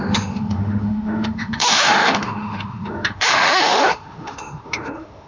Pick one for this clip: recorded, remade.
remade